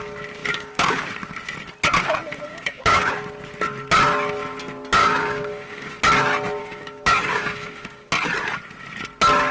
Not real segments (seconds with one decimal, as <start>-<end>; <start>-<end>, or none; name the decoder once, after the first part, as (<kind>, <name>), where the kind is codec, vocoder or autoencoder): 0.4-1.0 (codec, DAC); 2.5-3.1; 5.0-6.0; 6.6-8.1